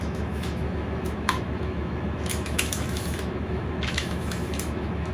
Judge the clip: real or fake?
fake